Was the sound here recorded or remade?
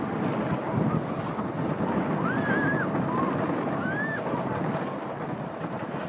recorded